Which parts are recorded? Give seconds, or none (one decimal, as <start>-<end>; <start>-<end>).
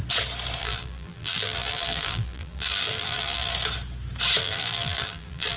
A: 0.0-0.6; 3.5-4.4